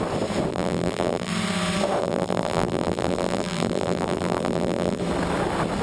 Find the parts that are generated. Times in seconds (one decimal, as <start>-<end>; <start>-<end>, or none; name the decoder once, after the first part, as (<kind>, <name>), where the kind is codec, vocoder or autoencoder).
0.5-1.3 (vocoder, BigVGAN v2); 2.0-5.0